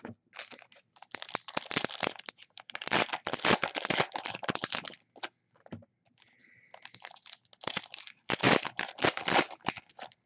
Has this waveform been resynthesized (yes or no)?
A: no